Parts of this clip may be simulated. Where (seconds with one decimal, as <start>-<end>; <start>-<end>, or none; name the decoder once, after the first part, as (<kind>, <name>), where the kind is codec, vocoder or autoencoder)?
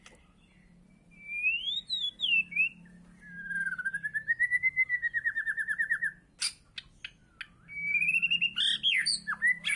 none